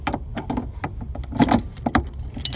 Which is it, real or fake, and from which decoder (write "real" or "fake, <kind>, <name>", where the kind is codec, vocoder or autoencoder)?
real